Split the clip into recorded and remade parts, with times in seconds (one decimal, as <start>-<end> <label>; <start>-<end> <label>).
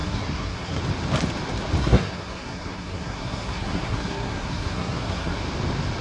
0.0-0.8 remade; 0.8-1.8 recorded; 1.8-5.4 remade; 5.4-6.0 recorded